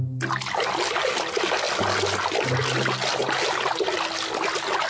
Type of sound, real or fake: real